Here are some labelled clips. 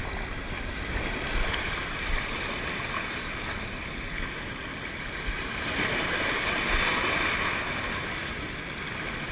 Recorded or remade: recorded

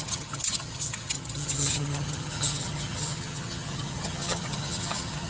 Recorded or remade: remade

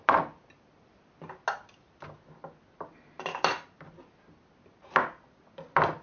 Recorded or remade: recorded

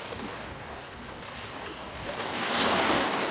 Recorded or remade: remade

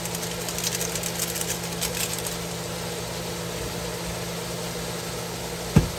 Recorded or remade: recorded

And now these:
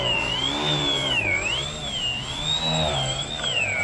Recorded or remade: recorded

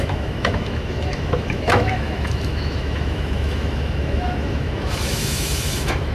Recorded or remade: remade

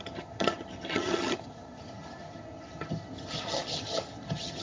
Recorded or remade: remade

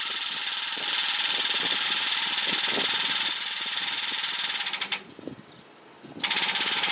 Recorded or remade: recorded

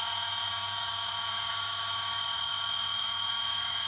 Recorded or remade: remade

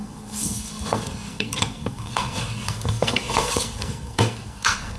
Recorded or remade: remade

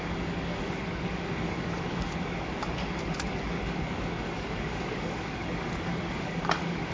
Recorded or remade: remade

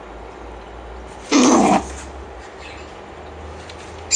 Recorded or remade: recorded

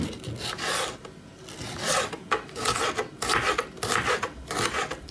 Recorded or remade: recorded